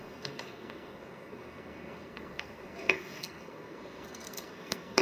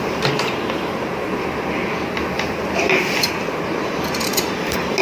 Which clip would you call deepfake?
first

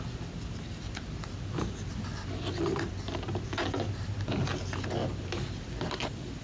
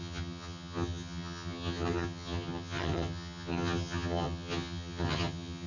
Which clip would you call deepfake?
second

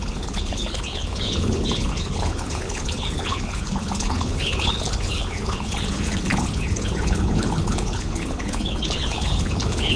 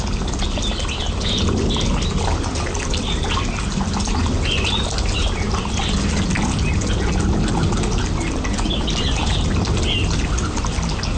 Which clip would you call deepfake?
first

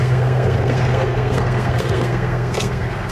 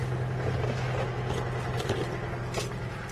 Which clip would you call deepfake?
first